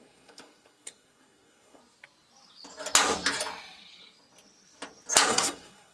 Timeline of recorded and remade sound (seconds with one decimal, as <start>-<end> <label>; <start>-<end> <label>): 0.0-1.8 remade; 1.8-5.3 recorded; 5.3-5.9 remade